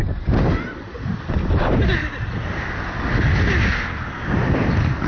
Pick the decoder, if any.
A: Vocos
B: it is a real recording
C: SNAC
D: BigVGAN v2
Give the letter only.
B